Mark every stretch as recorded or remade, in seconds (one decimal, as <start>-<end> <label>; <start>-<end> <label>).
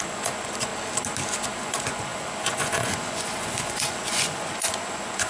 0.0-0.7 remade; 0.7-1.5 recorded; 1.5-5.3 remade